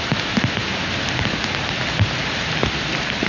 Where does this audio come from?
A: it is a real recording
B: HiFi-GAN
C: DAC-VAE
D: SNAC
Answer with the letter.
A